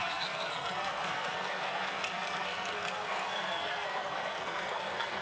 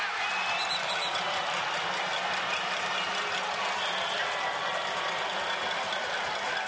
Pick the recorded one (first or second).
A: second